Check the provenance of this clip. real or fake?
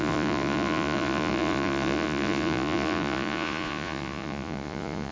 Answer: fake